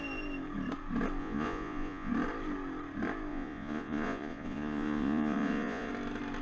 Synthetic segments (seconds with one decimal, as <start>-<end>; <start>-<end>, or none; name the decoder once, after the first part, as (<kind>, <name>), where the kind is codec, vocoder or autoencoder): 1.2-2.1 (vocoder, Vocos); 3.3-5.9